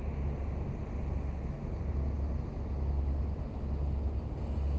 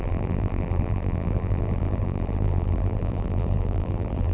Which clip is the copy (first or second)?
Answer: second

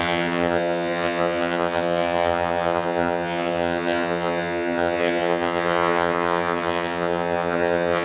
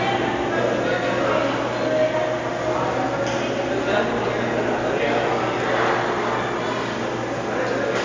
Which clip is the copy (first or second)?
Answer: first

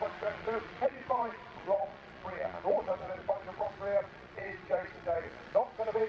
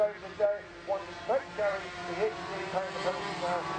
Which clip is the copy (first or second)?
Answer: first